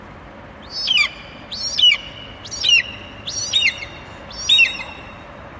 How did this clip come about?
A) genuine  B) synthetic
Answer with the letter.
A